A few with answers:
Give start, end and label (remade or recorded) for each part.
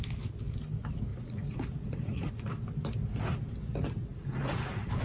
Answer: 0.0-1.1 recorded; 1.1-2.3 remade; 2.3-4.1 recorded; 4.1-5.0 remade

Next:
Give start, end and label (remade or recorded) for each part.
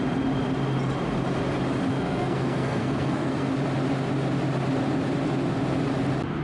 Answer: 0.0-1.9 recorded; 1.9-3.5 remade; 3.5-6.4 recorded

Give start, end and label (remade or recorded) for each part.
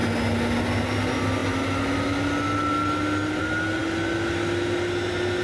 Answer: 0.0-5.4 recorded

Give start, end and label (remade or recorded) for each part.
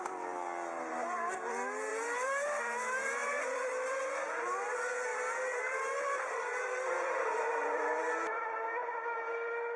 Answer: 0.0-1.9 recorded; 1.9-2.6 remade; 2.6-3.2 recorded; 3.2-4.1 remade; 4.1-5.1 recorded; 5.1-8.0 remade; 8.0-9.8 recorded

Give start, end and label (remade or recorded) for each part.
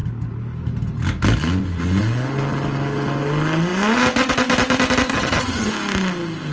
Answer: 0.0-5.1 recorded; 5.1-5.7 remade; 5.7-6.5 recorded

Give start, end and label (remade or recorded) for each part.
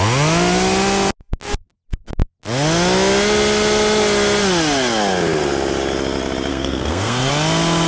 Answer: 0.0-6.5 recorded; 6.5-7.3 remade; 7.3-7.9 recorded